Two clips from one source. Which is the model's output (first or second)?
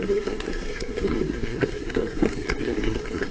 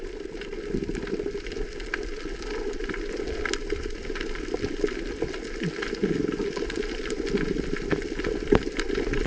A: first